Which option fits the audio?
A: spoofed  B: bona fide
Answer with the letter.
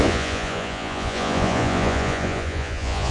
A